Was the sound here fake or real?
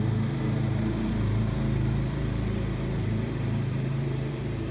fake